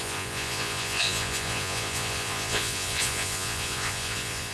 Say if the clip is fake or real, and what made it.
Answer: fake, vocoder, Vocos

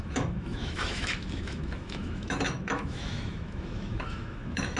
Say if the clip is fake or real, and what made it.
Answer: fake, autoencoder, DAC-VAE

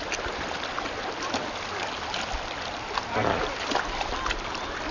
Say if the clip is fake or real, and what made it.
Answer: real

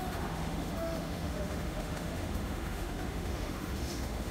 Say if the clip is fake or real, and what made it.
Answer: fake, autoencoder, DAC-VAE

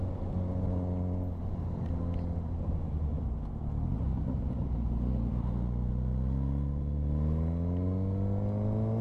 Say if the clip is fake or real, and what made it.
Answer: real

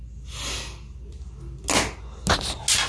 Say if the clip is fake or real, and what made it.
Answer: real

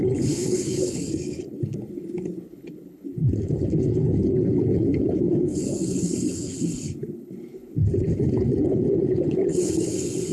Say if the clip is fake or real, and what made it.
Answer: fake, codec, HILCodec